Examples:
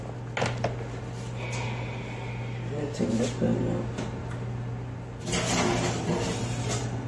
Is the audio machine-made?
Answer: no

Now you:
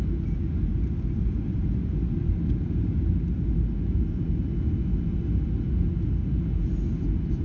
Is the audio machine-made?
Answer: no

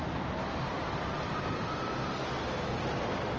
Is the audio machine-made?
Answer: no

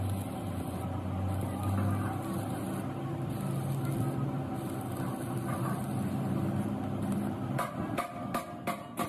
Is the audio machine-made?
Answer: no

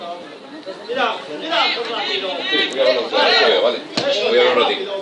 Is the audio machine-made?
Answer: no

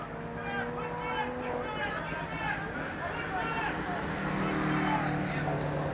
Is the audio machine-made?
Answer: no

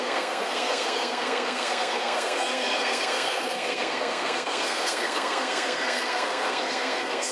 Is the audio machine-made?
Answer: yes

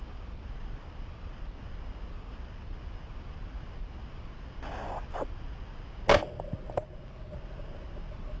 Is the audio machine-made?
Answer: no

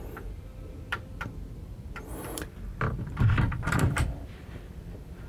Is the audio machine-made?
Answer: yes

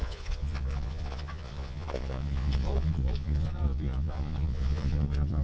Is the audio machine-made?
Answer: yes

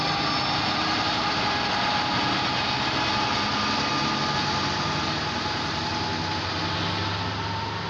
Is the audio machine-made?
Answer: no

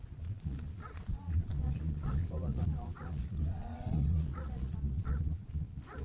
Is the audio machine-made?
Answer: yes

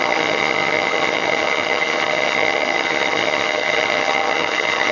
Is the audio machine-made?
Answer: yes